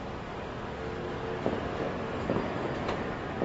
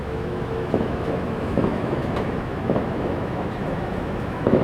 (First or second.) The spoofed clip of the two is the second